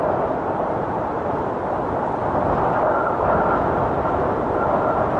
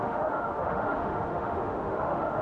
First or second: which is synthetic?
second